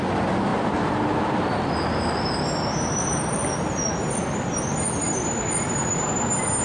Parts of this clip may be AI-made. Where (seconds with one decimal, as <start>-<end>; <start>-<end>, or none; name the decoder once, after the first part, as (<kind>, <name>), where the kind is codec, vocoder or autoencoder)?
none